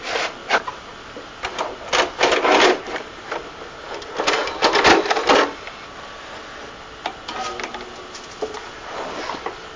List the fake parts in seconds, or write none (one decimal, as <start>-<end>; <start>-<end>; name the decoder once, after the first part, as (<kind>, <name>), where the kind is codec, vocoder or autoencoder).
none